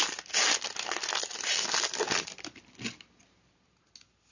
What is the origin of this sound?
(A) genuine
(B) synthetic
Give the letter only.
A